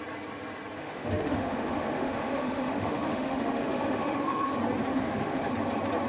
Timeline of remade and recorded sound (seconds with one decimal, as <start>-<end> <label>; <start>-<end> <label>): 0.0-0.8 recorded; 0.8-4.5 remade; 4.5-4.9 recorded; 4.9-5.5 remade; 5.5-6.1 recorded